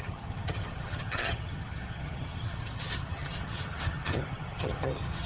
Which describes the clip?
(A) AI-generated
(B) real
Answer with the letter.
A